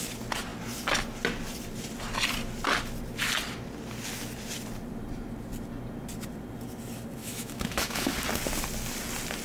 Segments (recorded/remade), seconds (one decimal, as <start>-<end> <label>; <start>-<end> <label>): 0.0-7.2 recorded; 7.2-8.1 remade; 8.1-9.4 recorded